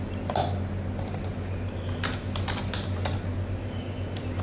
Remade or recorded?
recorded